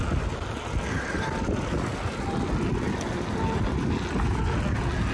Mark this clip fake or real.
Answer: real